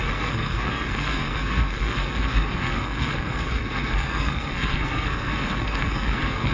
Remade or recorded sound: remade